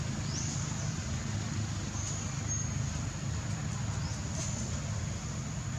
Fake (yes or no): no